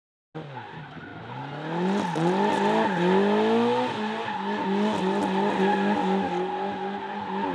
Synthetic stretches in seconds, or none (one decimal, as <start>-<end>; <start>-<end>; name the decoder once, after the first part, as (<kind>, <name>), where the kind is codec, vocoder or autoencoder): none